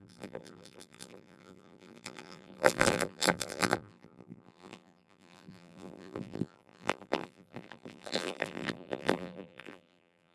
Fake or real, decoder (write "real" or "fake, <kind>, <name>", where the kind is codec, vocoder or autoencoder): fake, vocoder, BigVGAN v2